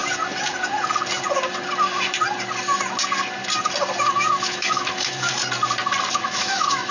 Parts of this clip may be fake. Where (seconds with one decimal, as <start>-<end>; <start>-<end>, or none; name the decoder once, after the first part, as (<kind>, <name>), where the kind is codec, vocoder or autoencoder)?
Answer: 4.1-5.3 (autoencoder, DAC-VAE); 6.2-6.9